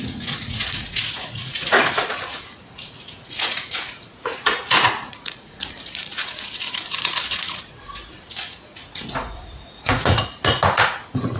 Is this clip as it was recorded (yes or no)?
no